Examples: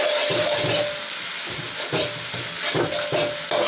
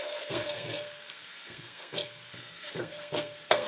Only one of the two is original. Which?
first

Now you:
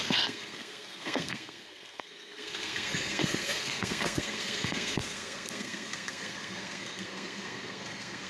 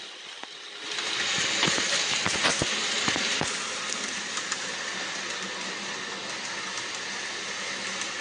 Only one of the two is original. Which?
second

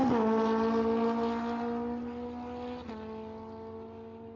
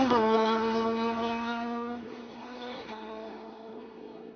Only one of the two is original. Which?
first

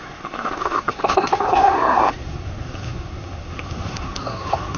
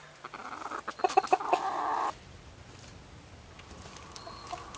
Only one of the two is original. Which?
second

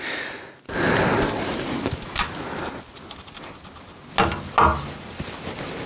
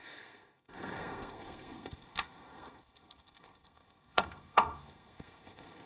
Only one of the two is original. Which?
first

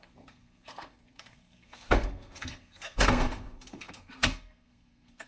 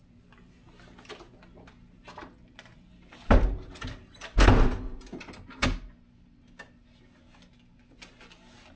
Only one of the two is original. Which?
second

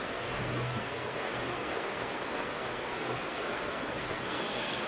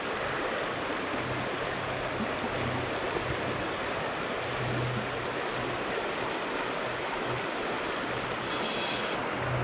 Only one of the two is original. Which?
second